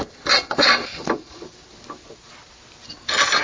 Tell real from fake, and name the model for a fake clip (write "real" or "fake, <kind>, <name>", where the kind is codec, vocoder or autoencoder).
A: real